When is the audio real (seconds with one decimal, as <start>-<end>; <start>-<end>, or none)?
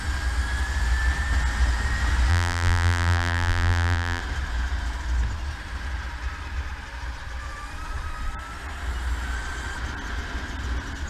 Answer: 0.0-2.3; 4.2-11.1